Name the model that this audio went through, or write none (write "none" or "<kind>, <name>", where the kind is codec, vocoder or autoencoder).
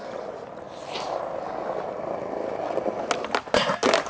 none